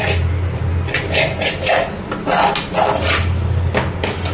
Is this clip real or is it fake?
real